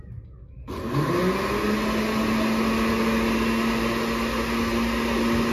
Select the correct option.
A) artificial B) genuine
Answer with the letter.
B